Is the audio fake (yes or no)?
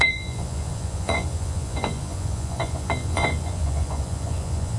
yes